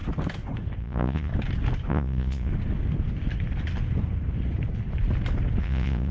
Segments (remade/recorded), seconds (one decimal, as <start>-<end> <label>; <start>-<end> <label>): 0.0-0.8 recorded; 0.8-1.3 remade; 1.3-1.9 recorded; 1.9-2.5 remade; 2.5-5.6 recorded; 5.6-6.1 remade